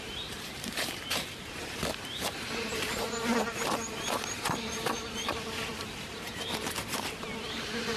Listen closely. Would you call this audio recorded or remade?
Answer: remade